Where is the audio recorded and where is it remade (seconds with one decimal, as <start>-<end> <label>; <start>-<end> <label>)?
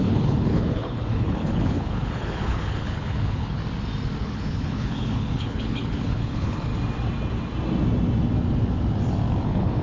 0.0-3.6 remade; 3.6-4.2 recorded; 4.2-6.7 remade; 6.7-9.4 recorded; 9.4-9.8 remade